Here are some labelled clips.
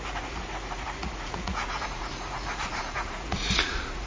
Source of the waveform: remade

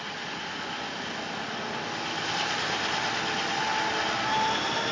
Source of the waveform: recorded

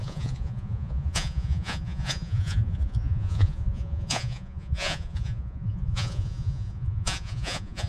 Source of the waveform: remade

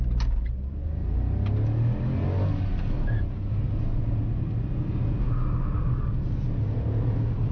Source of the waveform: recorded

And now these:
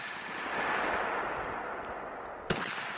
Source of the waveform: recorded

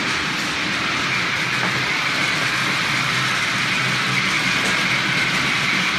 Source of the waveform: recorded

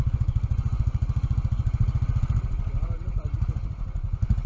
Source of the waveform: recorded